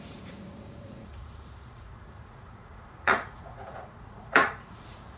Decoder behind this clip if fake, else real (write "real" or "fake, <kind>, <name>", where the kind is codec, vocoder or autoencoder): fake, vocoder, Vocos